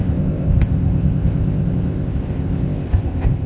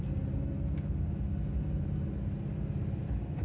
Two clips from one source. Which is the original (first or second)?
second